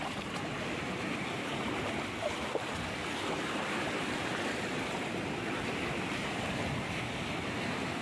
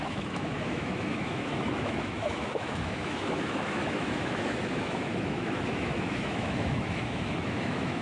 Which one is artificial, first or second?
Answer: second